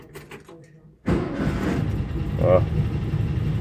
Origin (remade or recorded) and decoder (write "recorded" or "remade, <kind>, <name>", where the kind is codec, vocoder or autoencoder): recorded